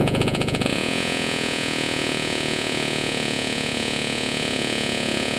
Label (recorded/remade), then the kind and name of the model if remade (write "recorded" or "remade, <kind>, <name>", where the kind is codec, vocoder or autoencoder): remade, vocoder, Vocos